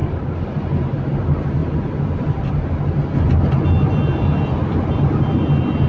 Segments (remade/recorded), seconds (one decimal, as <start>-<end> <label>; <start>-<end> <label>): 0.0-5.9 recorded